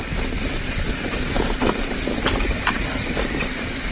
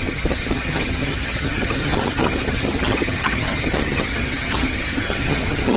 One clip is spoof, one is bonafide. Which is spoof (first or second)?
second